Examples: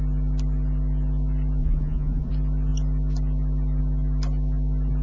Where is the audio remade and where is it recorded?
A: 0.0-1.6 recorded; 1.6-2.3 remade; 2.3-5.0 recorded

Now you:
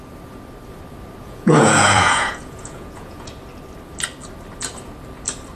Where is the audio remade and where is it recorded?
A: 0.0-1.2 recorded; 1.2-3.3 remade; 3.3-5.6 recorded